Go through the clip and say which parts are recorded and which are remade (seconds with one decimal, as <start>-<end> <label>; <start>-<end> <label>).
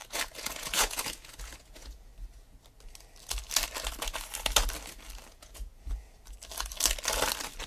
0.0-2.1 remade; 2.1-5.3 recorded; 5.3-5.7 remade; 5.7-7.7 recorded